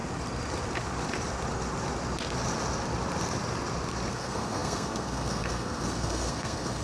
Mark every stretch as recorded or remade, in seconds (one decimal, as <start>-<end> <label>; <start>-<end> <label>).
0.0-4.1 recorded; 4.1-6.8 remade